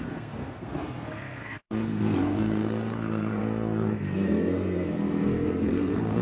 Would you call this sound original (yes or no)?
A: no